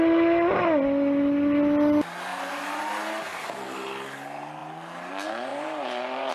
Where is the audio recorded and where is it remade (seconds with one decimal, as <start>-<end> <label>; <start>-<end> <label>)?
0.0-2.3 recorded; 2.3-2.9 remade; 2.9-5.5 recorded; 5.5-6.3 remade